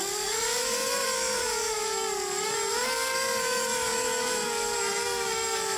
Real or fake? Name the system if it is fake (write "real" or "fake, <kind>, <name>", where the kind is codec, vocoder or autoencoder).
fake, codec, SNAC